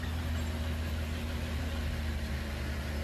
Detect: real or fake real